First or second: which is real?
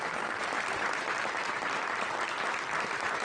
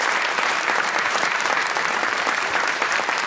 first